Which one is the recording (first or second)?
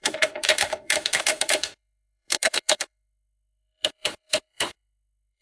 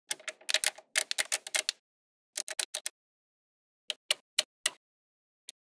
second